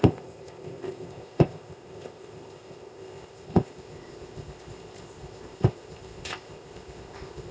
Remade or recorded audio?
remade